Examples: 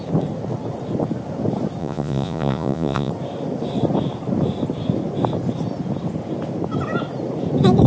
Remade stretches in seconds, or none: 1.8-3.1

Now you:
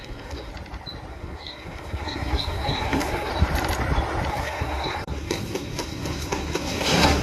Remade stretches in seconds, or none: 0.0-0.5; 1.1-3.3; 4.3-7.2